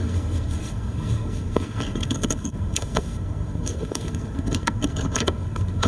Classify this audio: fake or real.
fake